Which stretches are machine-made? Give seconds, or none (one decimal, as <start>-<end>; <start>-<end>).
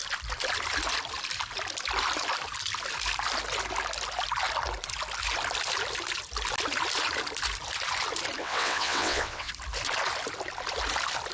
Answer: 8.4-9.5